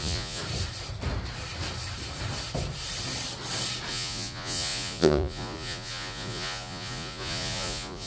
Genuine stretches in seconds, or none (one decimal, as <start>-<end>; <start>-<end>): 0.4-3.9